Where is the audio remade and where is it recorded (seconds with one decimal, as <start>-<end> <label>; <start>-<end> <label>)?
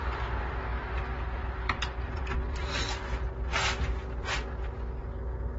0.0-0.7 recorded; 0.7-2.9 remade; 2.9-5.6 recorded